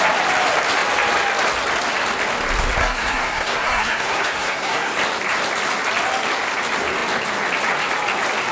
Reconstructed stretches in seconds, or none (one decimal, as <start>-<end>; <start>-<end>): 2.8-4.9